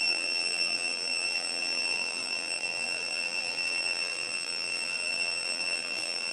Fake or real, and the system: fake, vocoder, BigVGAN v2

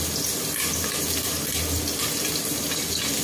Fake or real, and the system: real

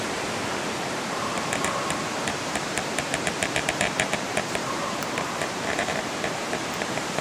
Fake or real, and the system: fake, vocoder, BigVGAN v2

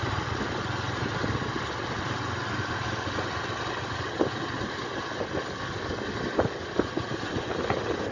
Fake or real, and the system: real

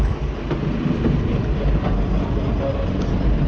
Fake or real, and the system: real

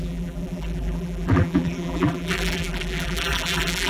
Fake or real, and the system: fake, vocoder, BigVGAN v2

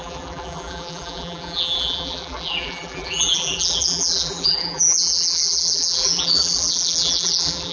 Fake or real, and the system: fake, vocoder, BigVGAN v2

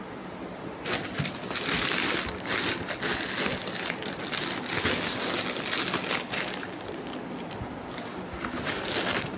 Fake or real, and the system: real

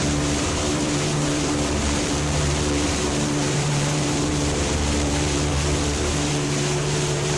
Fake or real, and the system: fake, vocoder, BigVGAN v2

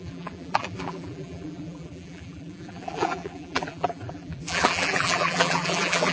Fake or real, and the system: fake, vocoder, BigVGAN v2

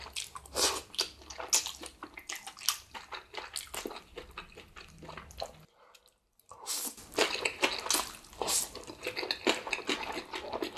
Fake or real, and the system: real